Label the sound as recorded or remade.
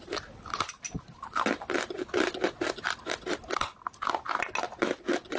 recorded